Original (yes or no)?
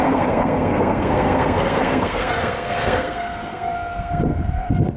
no